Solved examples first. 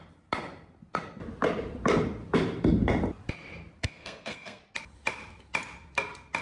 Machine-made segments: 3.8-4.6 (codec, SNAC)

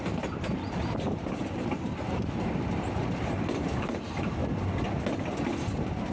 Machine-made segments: 0.0-4.4 (vocoder, BigVGAN v2); 5.4-6.1

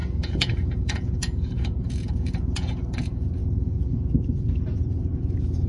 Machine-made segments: 0.0-3.4 (vocoder, Vocos); 4.5-5.7

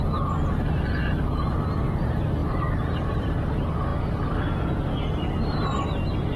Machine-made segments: 2.4-3.5 (vocoder, BigVGAN v2)

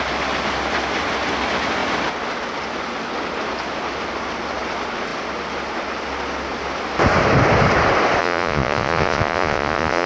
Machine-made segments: 8.2-10.1 (vocoder, Vocos)

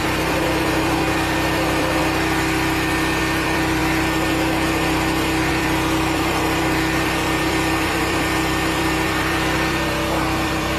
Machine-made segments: 0.0-2.0 (vocoder, BigVGAN v2); 3.2-3.8; 5.5-10.8

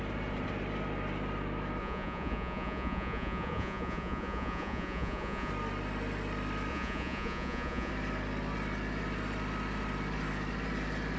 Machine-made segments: 1.8-5.5 (vocoder, Vocos); 6.7-7.9

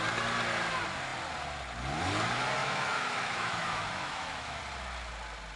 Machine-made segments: 2.6-4.6 (autoencoder, DAC-VAE)